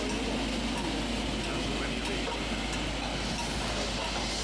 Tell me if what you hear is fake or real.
real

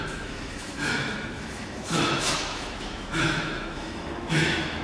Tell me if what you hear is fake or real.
fake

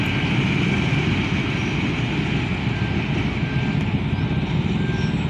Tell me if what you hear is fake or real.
real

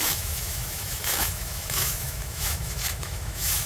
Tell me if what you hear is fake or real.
fake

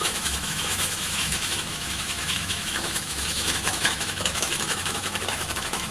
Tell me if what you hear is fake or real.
fake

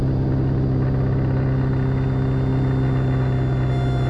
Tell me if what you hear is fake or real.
real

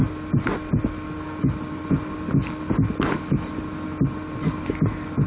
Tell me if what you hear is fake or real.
real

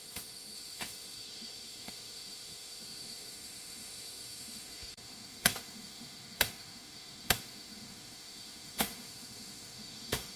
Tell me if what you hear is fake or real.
fake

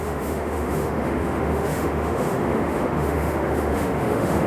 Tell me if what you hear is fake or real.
fake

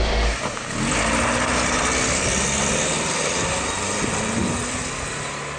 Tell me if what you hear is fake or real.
real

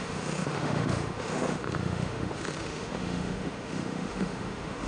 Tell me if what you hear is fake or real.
fake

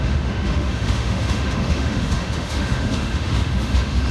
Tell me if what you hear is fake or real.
fake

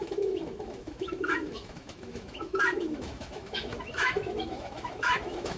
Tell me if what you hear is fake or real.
fake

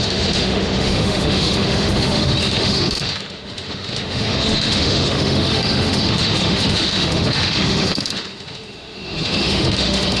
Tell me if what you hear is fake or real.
fake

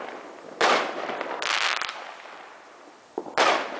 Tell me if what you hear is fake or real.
real